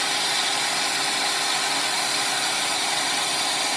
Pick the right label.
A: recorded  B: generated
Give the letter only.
A